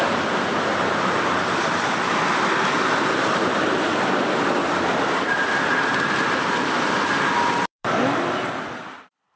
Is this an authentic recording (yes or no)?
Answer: no